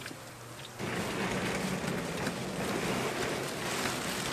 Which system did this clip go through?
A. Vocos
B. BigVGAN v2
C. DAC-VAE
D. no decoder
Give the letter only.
D